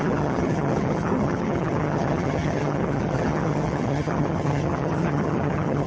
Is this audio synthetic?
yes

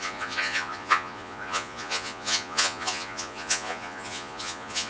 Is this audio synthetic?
yes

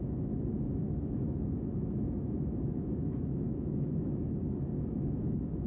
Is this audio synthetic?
yes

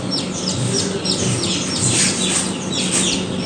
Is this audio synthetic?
no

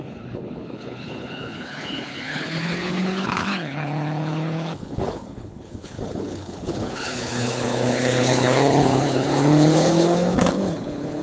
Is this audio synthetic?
yes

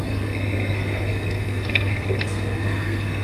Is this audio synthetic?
yes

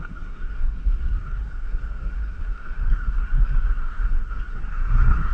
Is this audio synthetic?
yes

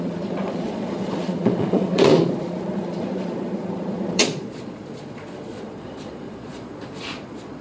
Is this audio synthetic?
yes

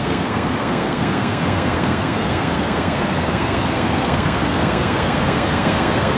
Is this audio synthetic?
yes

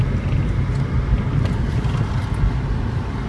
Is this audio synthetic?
no